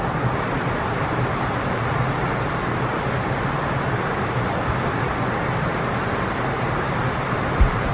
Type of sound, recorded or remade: recorded